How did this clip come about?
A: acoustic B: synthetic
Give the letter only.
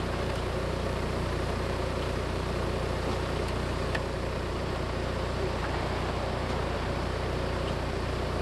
B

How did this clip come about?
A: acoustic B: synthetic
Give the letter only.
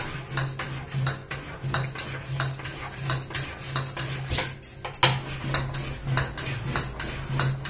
A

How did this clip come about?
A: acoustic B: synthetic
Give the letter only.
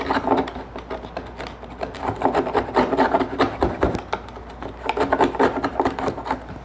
A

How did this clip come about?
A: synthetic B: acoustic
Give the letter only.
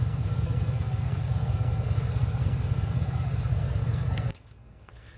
A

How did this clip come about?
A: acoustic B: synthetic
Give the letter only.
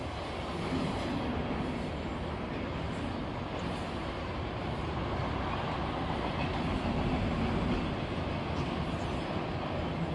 A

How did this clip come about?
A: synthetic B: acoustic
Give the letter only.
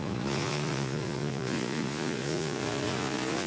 A